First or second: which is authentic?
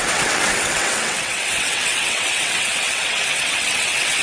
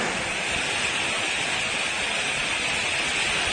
second